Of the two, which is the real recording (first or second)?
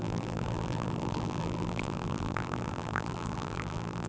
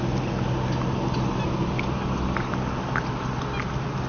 second